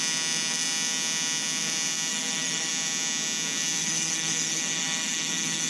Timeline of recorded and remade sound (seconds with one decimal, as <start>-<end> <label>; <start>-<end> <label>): 0.0-2.1 recorded; 2.1-2.7 remade; 2.7-3.8 recorded; 3.8-5.7 remade